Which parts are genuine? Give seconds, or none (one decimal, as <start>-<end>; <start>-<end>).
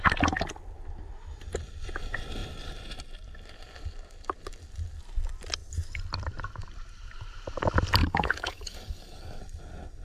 0.0-8.0; 9.4-10.0